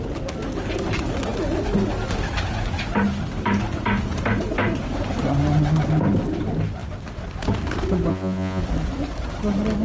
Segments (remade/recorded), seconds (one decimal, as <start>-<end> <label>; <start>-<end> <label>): 0.0-8.1 recorded; 8.1-8.6 remade; 8.6-9.8 recorded